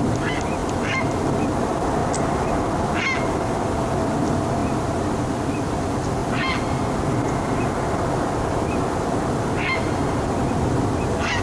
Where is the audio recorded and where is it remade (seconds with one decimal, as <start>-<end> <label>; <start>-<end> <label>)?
0.0-0.6 recorded; 0.6-1.2 remade; 1.2-2.0 recorded; 2.0-2.5 remade; 2.5-11.4 recorded